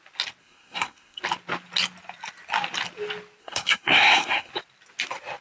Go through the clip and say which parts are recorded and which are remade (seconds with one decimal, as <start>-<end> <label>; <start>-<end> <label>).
0.0-0.4 recorded; 0.4-1.2 remade; 1.2-3.4 recorded; 3.4-4.5 remade; 4.5-5.4 recorded